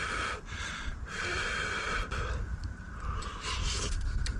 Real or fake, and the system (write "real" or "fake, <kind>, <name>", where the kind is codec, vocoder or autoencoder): real